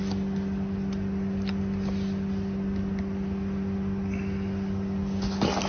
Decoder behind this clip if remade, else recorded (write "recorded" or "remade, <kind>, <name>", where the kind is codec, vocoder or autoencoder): recorded